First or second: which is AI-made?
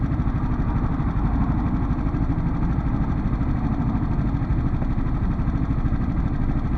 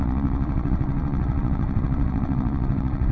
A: second